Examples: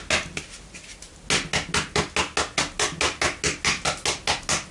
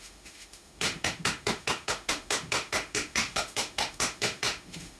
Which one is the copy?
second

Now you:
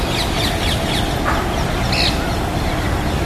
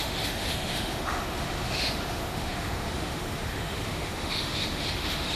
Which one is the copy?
second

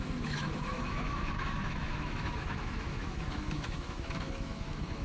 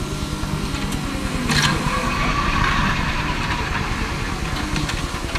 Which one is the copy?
first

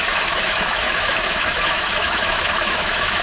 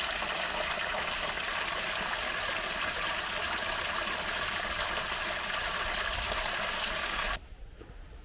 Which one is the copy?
first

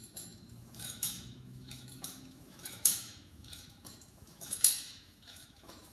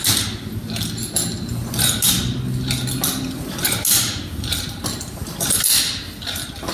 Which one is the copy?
first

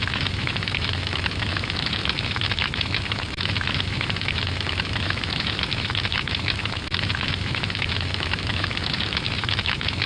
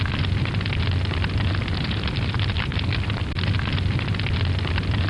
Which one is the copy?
first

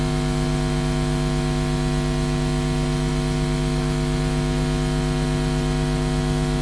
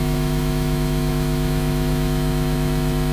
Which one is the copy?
second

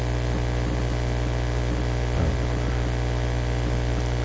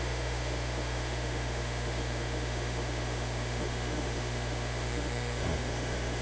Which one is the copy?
second